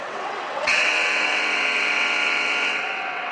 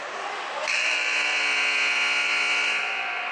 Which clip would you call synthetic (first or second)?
first